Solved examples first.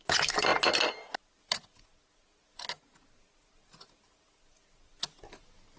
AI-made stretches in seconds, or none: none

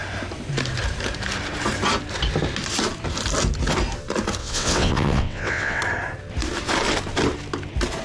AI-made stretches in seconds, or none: 4.4-5.8 (vocoder, WaveNeXt)